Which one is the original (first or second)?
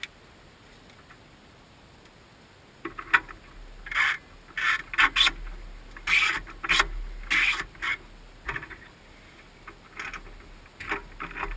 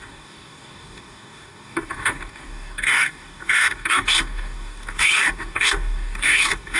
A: first